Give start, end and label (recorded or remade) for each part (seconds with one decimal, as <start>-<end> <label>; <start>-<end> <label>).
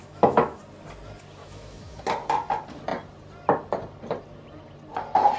0.0-0.6 remade; 0.6-1.4 recorded; 1.4-2.0 remade; 2.0-5.4 recorded